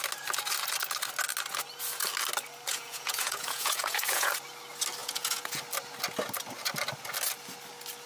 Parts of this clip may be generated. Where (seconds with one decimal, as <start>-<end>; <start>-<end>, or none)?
2.7-4.3; 5.0-5.6